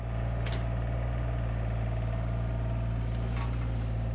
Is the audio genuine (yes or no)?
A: yes